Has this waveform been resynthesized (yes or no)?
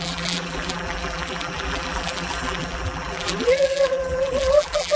yes